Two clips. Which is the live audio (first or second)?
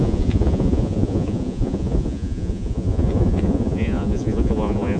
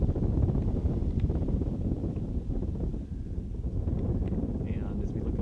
second